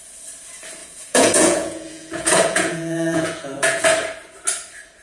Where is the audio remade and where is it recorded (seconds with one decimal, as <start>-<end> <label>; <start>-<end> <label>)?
0.0-0.8 recorded; 0.8-3.8 remade; 3.8-5.0 recorded